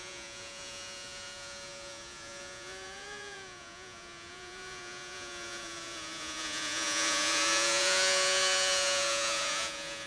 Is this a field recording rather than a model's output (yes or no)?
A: no